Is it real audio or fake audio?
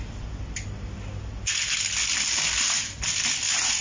real